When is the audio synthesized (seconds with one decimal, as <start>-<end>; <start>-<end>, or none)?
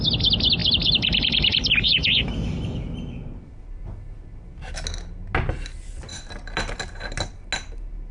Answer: 0.6-2.5